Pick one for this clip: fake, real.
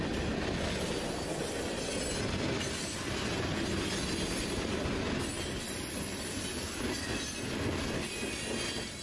real